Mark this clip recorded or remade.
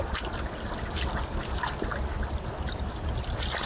recorded